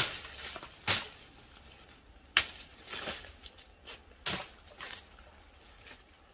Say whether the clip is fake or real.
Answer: real